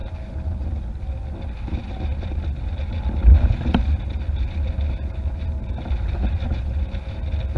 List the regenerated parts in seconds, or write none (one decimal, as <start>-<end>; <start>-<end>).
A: none